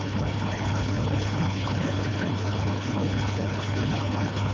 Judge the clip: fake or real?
fake